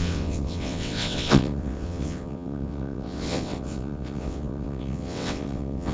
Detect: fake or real fake